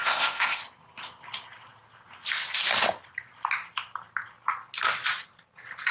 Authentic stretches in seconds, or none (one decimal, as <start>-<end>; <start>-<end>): 0.6-5.9